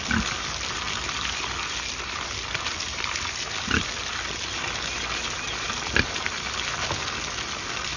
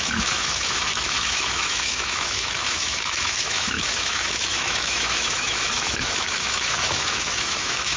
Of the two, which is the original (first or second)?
first